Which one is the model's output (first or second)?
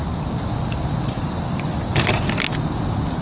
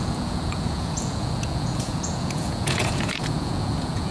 second